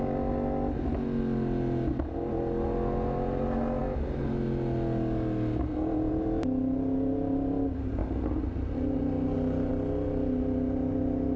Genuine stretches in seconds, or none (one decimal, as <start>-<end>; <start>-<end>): 0.0-11.4